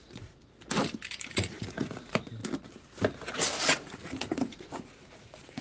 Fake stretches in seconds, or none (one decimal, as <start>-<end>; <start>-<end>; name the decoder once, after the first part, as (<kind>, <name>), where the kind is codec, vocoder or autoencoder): 0.0-0.4 (vocoder, Vocos); 1.3-2.4; 3.6-5.6